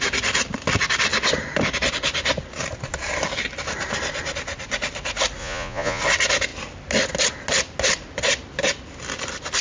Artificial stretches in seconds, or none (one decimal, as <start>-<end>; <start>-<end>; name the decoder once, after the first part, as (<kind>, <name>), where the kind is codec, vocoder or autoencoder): 5.4-6.0 (vocoder, Vocos)